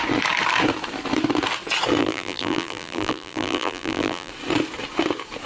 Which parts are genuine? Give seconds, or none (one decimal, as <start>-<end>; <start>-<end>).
0.0-2.0; 4.3-5.5